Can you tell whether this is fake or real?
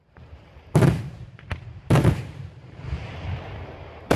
fake